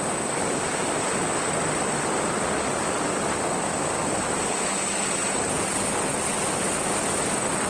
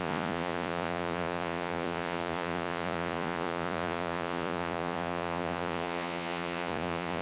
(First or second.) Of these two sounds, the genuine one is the first